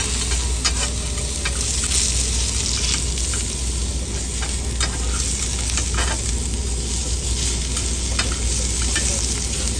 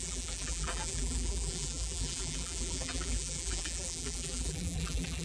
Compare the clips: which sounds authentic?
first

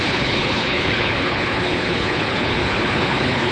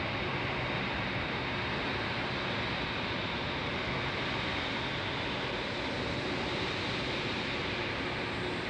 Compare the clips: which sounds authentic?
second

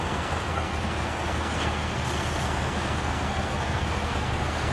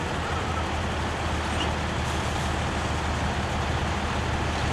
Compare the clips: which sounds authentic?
second